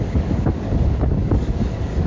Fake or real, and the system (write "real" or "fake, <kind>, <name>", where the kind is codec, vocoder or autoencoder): fake, codec, DAC